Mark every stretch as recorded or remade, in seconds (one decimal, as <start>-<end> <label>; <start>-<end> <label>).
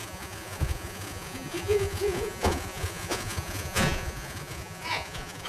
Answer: 0.0-5.5 remade